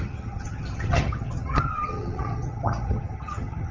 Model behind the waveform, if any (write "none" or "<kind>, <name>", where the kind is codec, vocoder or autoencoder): vocoder, HiFi-GAN